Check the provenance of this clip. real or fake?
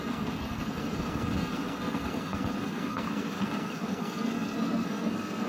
fake